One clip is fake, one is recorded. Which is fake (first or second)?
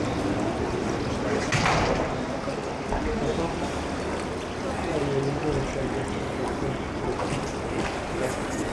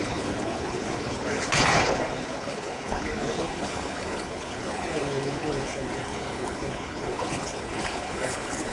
second